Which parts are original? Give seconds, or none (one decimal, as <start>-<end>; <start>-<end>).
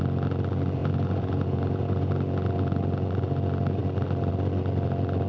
0.0-0.8; 2.1-5.3